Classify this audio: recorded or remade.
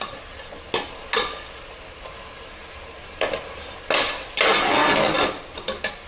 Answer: recorded